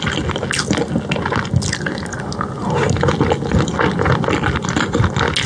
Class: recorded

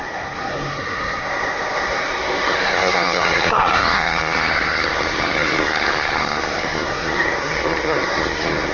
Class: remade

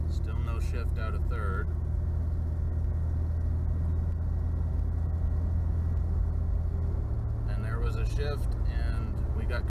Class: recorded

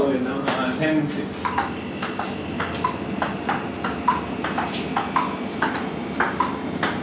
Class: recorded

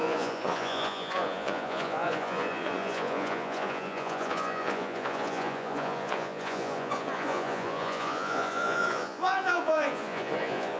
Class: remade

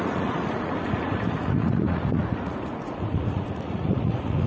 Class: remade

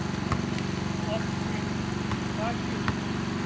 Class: recorded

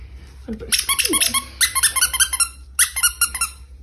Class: recorded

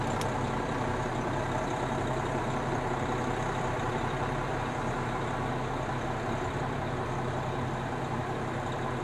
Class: remade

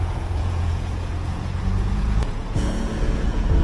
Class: remade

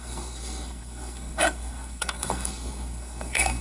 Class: remade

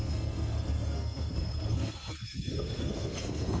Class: remade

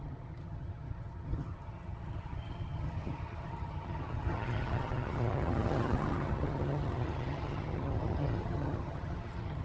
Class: remade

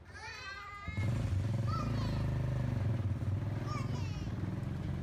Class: recorded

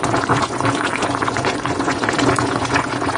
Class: remade